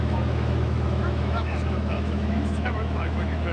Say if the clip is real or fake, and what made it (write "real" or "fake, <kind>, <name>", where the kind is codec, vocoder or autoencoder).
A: fake, autoencoder, DAC-VAE